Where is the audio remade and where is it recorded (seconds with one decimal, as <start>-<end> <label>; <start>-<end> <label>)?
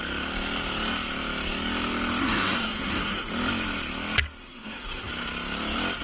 0.0-2.2 recorded; 2.2-3.3 remade; 3.3-4.4 recorded; 4.4-5.1 remade; 5.1-6.0 recorded